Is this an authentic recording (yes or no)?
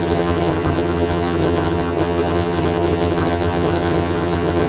no